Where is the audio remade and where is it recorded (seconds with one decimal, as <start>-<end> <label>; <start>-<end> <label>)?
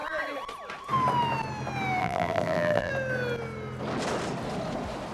0.0-2.0 recorded; 2.0-2.9 remade; 2.9-5.1 recorded